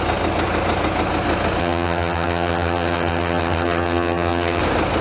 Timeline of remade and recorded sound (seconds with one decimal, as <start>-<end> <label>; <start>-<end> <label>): 0.0-1.6 recorded; 1.6-4.6 remade; 4.6-5.0 recorded